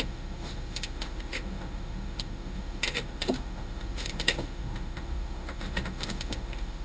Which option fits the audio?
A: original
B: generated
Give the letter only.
B